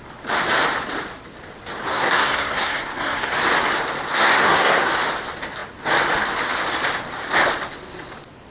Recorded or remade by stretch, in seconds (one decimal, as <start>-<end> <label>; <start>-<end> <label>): 0.0-1.9 recorded; 1.9-3.3 remade; 3.3-4.1 recorded; 4.1-4.9 remade; 4.9-8.5 recorded